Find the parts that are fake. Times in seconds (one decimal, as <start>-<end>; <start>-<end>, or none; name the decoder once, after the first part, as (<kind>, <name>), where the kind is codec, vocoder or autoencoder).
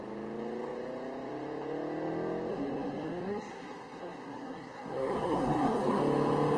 2.5-6.0 (codec, SNAC)